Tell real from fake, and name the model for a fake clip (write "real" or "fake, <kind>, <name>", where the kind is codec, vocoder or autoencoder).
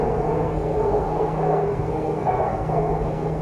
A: fake, codec, SNAC